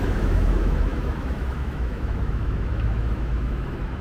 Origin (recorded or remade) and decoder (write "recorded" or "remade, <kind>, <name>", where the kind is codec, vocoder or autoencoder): remade, autoencoder, DAC-VAE